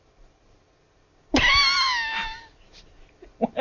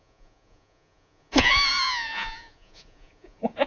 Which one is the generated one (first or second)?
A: second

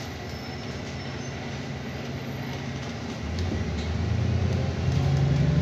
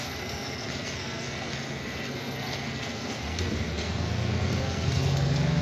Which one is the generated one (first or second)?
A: second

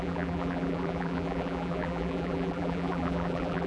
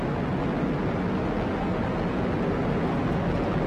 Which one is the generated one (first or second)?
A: first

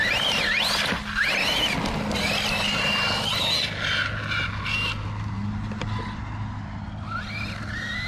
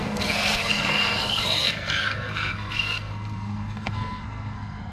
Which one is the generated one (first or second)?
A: second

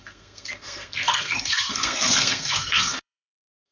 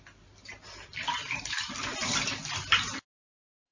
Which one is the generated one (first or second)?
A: first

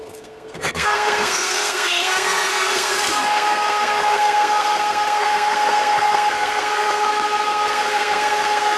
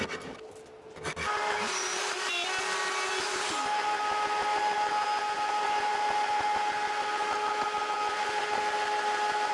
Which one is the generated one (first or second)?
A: first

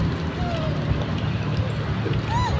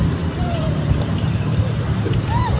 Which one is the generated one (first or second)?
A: second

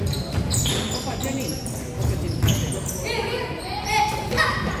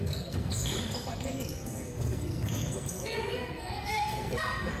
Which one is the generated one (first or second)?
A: second